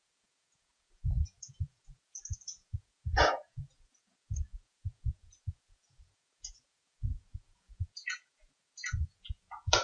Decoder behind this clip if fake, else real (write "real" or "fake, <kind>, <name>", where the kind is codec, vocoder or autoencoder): fake, vocoder, Vocos